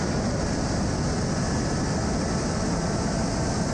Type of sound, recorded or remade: recorded